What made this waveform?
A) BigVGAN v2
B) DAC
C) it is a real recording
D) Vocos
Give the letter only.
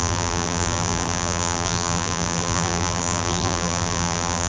A